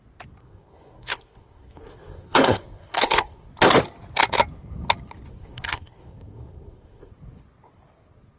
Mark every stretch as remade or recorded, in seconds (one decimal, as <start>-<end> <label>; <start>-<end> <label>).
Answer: 0.0-0.4 recorded; 0.4-3.5 remade; 3.5-5.3 recorded; 5.3-7.1 remade; 7.1-8.4 recorded